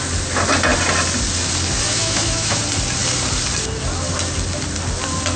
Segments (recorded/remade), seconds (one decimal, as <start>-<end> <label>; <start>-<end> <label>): 0.0-1.9 recorded; 1.9-2.6 remade; 2.6-5.4 recorded